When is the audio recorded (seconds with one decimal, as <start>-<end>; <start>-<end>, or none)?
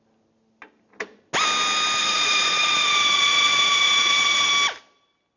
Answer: 0.0-2.0; 4.5-5.4